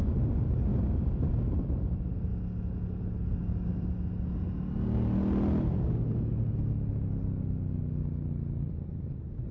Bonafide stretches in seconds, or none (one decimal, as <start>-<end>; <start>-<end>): 0.0-9.5